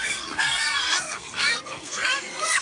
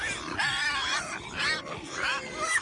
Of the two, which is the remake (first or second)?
first